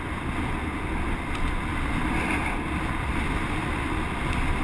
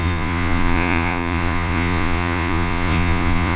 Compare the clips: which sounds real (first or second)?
first